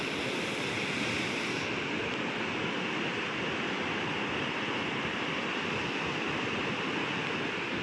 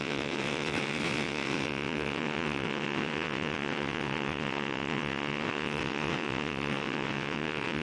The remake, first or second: second